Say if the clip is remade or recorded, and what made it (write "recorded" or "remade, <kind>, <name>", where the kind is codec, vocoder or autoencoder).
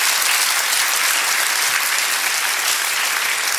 recorded